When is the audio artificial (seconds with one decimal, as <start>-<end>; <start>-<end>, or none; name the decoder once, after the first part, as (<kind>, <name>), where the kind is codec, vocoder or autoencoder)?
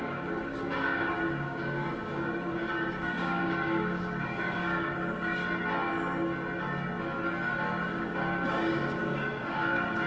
0.0-5.4 (codec, DAC); 7.8-10.1